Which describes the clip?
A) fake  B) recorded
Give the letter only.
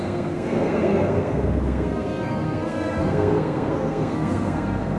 A